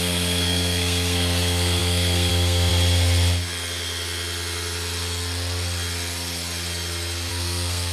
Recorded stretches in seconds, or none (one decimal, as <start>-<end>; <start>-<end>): 2.7-7.3